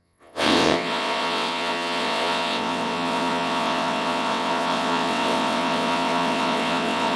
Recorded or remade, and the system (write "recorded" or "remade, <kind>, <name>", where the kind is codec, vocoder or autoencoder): remade, vocoder, WaveNeXt